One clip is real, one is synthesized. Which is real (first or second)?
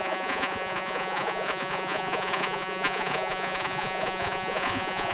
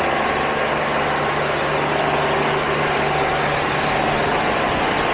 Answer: second